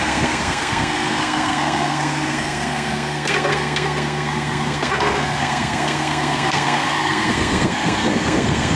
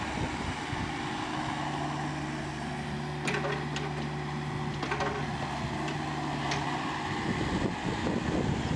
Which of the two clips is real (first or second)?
second